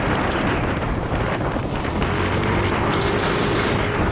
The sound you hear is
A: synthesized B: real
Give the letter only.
A